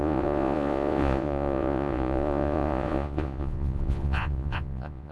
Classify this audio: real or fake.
fake